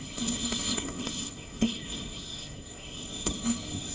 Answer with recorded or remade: remade